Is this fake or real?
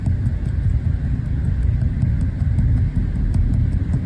real